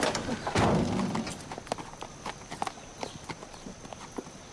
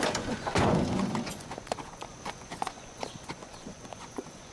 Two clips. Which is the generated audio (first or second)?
second